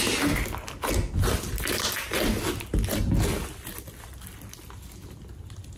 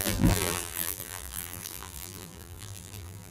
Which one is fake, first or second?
second